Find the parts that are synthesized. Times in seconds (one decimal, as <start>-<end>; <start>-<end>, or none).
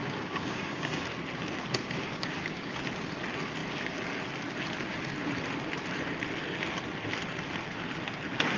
0.0-1.0; 1.8-2.7